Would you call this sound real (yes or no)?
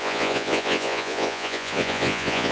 no